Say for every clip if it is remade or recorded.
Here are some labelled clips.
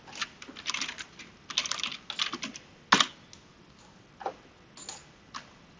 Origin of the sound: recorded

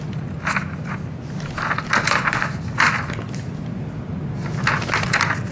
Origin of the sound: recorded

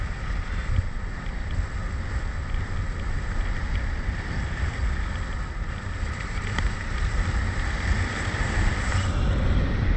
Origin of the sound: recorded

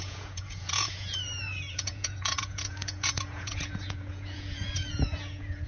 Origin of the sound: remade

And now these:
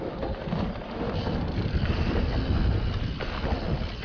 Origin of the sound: recorded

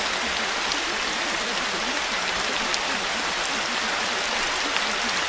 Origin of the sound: recorded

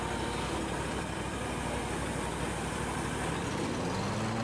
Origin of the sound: recorded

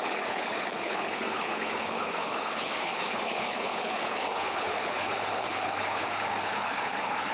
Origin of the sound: remade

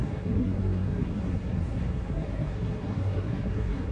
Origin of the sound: remade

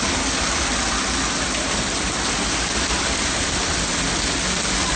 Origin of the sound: recorded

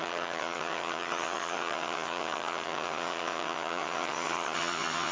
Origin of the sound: remade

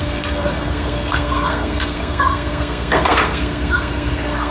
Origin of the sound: remade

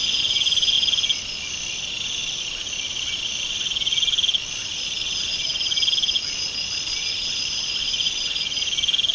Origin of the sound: recorded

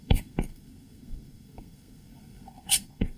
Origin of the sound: remade